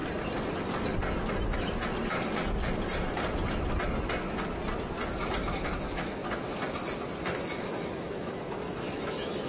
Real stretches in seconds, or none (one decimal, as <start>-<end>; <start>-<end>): 0.0-1.3; 1.8-5.8; 6.2-7.5

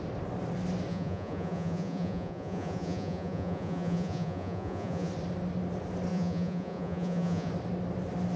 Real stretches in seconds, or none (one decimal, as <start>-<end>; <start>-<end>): 0.0-0.9; 5.1-6.1; 7.5-8.4

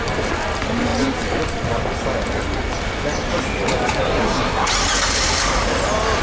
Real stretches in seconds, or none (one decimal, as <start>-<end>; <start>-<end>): 0.0-4.1; 4.7-6.2

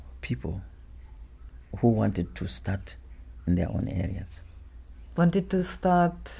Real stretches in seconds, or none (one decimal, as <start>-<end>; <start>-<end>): 0.0-6.4

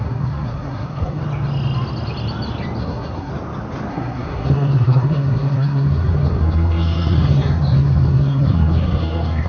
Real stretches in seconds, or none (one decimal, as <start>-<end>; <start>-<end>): 1.2-2.8; 3.3-3.9

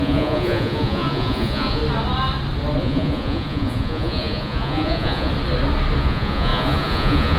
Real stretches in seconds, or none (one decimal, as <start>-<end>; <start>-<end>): 1.8-2.8; 5.3-6.0